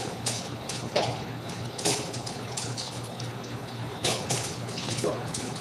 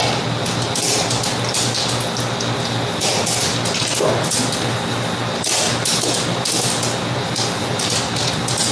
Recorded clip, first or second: second